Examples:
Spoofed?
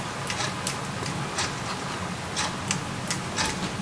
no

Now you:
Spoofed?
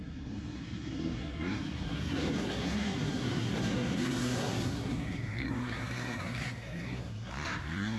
yes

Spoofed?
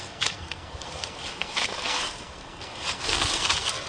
yes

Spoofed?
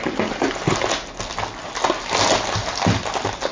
no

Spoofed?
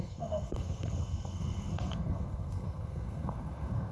yes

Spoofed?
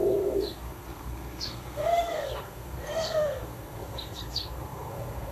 yes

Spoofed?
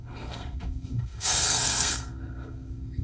yes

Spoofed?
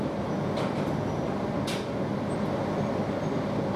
no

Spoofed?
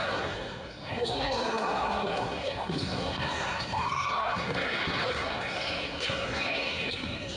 yes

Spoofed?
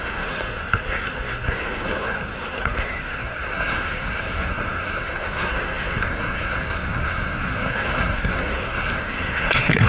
yes